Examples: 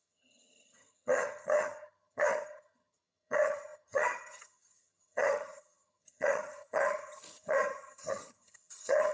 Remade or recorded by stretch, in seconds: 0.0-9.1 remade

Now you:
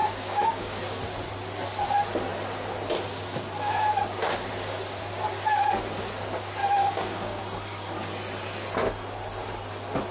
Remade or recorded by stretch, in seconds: 0.0-0.8 remade; 0.8-6.6 recorded; 6.6-7.4 remade; 7.4-10.1 recorded